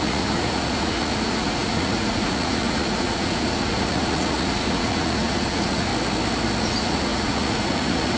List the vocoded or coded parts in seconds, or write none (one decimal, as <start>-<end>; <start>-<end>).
0.0-5.9; 6.6-8.2